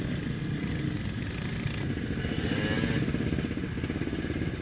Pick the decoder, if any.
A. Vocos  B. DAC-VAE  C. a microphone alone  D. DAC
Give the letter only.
C